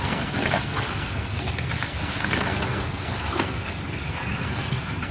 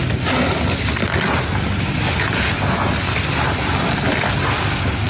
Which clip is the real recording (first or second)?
second